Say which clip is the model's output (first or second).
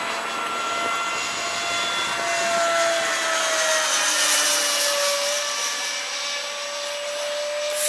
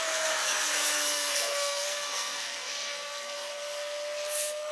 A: second